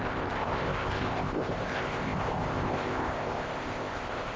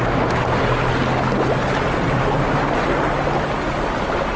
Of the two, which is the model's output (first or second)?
first